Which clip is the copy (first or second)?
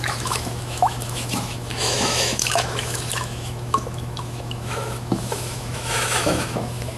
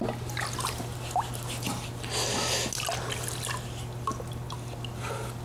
first